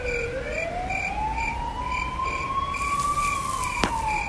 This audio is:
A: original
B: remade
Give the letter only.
A